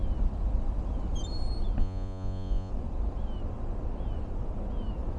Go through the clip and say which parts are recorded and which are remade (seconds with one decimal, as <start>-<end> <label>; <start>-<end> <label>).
0.0-1.8 recorded; 1.8-2.7 remade; 2.7-5.2 recorded